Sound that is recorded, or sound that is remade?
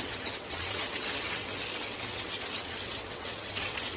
remade